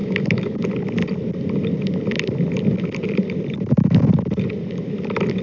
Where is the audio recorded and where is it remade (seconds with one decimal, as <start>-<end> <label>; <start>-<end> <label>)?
0.0-0.6 remade; 0.6-5.4 recorded